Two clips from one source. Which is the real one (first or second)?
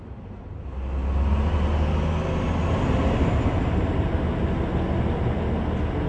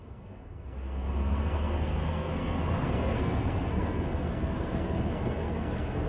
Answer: first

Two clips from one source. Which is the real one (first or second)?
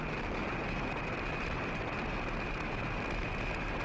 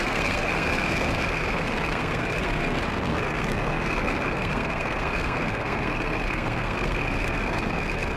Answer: first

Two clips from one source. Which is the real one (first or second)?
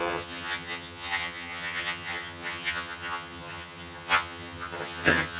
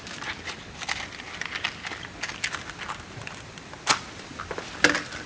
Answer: second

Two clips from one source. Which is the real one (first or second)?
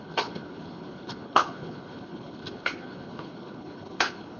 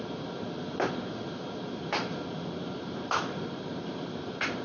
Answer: second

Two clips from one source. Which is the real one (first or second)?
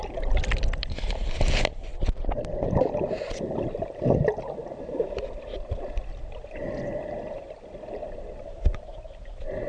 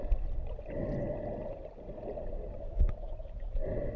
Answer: second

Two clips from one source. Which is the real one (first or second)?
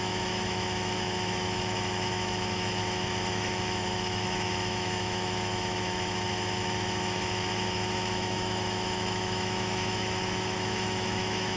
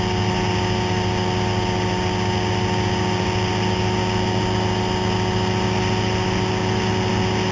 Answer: second